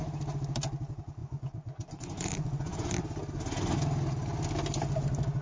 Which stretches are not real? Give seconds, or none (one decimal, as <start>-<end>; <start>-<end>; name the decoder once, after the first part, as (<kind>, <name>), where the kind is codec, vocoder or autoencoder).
1.2-2.9 (vocoder, Vocos)